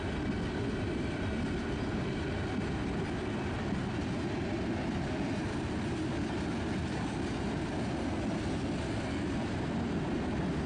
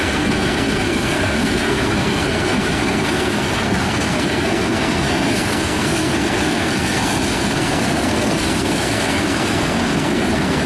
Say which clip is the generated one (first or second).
second